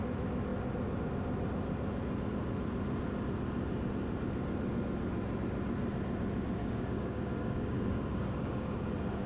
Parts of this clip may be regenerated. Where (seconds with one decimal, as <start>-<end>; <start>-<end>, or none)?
6.6-8.9